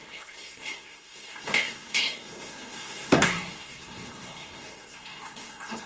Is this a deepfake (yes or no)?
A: yes